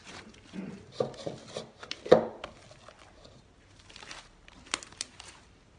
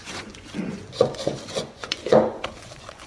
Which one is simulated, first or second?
second